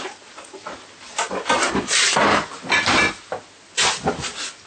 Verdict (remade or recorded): recorded